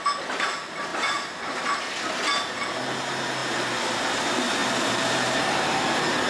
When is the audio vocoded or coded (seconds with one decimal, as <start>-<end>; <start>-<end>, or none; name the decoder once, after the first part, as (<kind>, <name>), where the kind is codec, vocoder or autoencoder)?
0.9-1.9 (vocoder, BigVGAN v2); 4.6-5.8